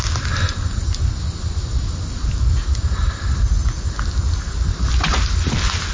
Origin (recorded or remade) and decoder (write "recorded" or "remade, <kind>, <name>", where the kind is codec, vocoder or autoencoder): recorded